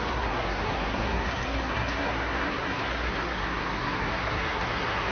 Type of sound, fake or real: fake